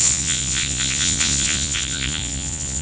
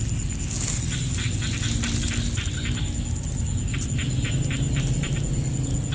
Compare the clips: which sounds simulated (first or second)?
first